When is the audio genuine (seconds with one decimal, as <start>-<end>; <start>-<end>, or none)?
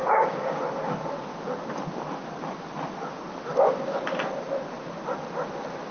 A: 0.6-5.9